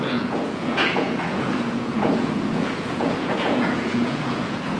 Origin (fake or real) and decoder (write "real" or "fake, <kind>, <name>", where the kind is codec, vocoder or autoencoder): fake, vocoder, Vocos